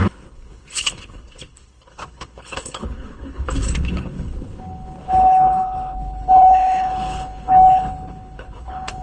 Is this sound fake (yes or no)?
yes